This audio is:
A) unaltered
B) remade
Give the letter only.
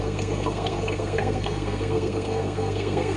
B